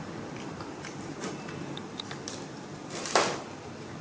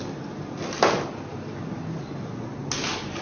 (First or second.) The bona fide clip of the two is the second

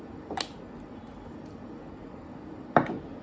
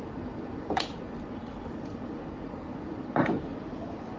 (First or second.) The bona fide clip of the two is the first